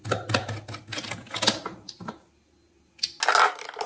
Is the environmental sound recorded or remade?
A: recorded